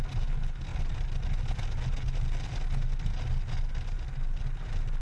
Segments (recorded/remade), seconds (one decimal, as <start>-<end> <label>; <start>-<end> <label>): 0.0-5.0 recorded